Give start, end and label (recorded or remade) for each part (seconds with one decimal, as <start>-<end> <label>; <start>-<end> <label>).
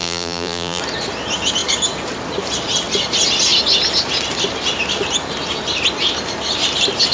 0.0-0.8 remade; 0.8-7.1 recorded